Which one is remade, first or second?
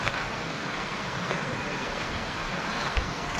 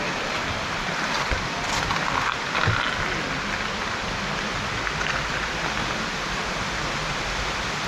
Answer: first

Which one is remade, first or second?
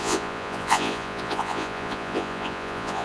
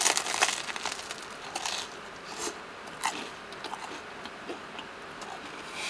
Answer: first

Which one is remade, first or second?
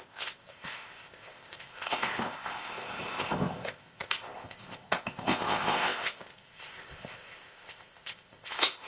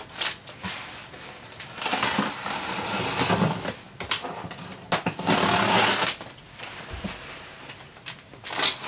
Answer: first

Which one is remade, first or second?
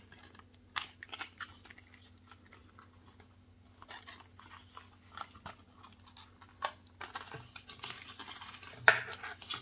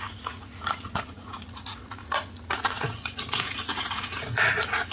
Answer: second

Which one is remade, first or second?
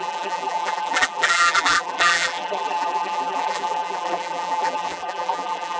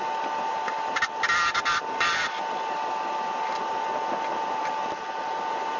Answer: first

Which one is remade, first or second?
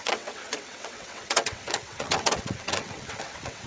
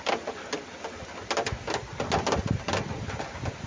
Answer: first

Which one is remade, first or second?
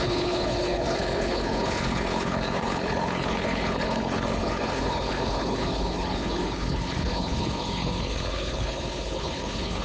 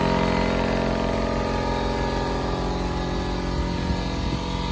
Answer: first